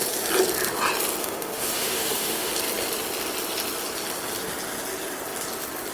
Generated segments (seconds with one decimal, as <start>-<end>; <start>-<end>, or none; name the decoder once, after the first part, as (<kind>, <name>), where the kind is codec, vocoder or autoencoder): 1.2-2.5 (autoencoder, DAC-VAE)